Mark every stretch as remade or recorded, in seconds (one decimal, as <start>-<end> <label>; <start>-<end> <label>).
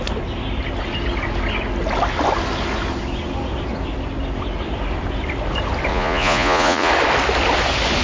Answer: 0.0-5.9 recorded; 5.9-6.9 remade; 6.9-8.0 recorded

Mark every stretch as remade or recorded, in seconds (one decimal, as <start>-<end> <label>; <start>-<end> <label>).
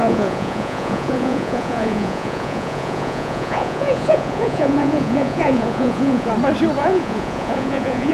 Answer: 0.0-6.3 remade; 6.3-6.8 recorded; 6.8-8.1 remade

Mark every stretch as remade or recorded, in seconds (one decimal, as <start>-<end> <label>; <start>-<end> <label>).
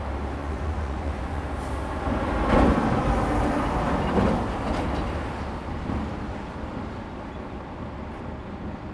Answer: 0.0-0.4 recorded; 0.4-1.4 remade; 1.4-8.9 recorded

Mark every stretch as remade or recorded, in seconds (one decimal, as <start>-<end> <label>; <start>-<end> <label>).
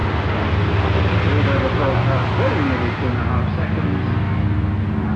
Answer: 0.0-5.2 recorded